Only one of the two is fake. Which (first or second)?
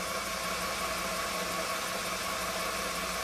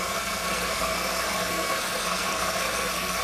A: second